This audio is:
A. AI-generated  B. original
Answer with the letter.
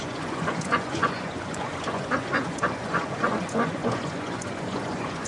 A